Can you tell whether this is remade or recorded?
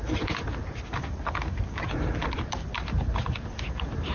recorded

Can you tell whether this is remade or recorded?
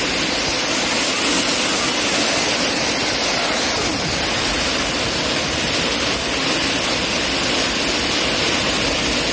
recorded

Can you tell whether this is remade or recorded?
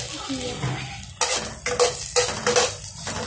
recorded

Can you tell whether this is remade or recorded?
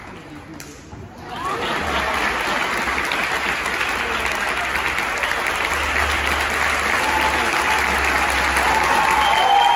recorded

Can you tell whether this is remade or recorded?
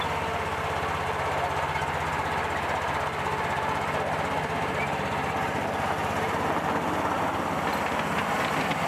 recorded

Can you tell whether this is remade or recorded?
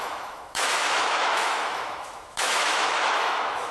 remade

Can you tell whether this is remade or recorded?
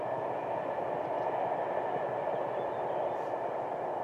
recorded